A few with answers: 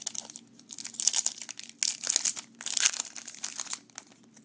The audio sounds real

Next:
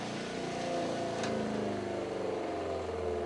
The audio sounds real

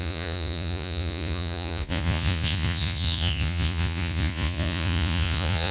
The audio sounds fake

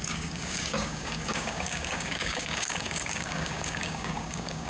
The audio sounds fake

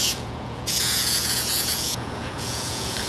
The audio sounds fake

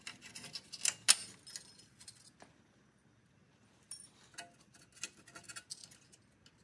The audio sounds real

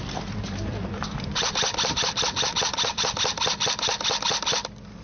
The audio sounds fake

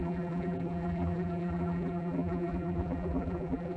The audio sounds fake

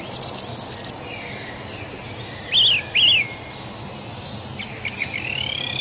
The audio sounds real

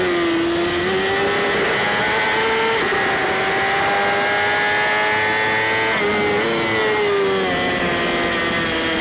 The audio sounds real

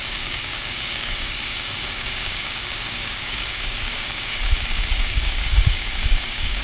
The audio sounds fake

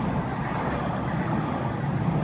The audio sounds real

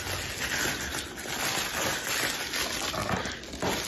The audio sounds real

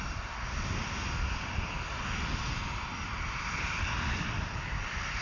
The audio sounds real